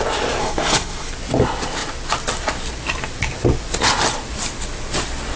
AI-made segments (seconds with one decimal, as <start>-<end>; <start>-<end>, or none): 0.4-1.1